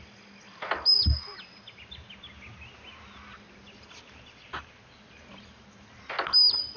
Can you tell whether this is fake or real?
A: real